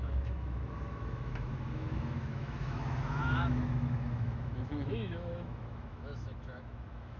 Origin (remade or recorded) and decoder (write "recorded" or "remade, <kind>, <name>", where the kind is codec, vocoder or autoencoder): remade, autoencoder, DAC-VAE